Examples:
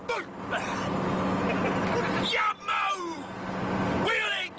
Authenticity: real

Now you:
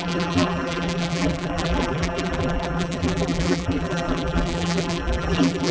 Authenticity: fake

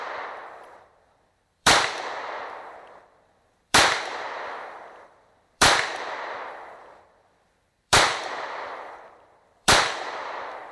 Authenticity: fake